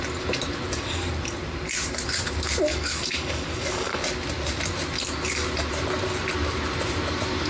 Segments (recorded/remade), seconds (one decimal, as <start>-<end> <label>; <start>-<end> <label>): 0.0-2.7 recorded; 2.7-4.0 remade; 4.0-7.5 recorded